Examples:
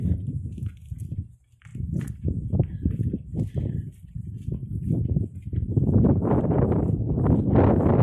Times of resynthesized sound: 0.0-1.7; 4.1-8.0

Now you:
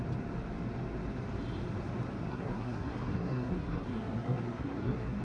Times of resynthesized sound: 2.3-5.2

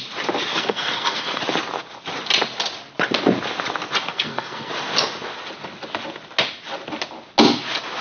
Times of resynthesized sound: 0.5-1.4; 4.1-4.7

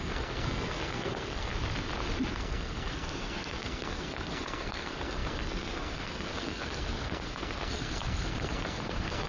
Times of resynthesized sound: 0.0-1.5; 2.3-9.3

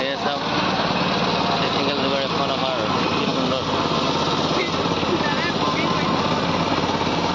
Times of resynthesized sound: none

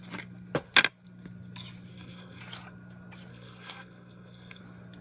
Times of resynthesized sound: 1.9-2.4; 3.3-4.6

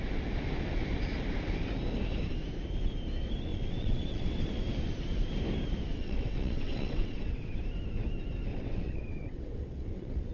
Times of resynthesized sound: 3.5-4.4; 5.9-7.6; 8.5-10.3